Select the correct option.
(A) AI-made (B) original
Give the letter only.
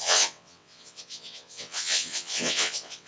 A